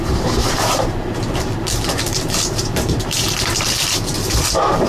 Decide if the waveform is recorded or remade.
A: remade